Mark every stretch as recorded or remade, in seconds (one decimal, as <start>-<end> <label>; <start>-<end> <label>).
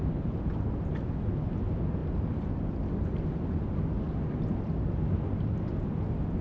0.0-6.4 recorded